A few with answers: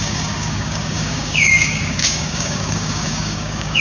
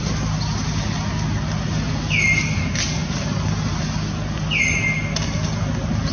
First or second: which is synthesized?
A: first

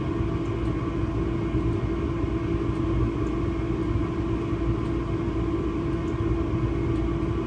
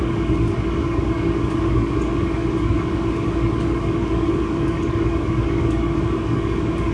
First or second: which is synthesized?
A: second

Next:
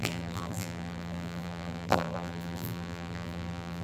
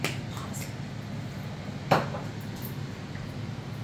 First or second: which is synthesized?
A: first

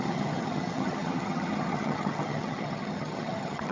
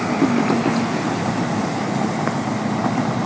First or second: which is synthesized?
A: first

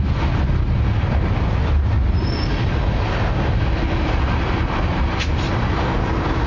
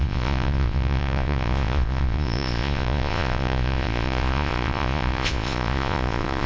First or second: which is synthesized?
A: second